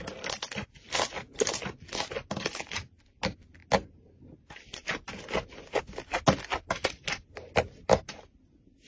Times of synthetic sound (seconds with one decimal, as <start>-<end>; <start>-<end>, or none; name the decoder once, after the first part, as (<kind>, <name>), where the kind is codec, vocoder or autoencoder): none